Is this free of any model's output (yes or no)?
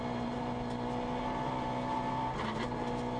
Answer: yes